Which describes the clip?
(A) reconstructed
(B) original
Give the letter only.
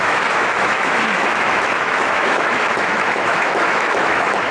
A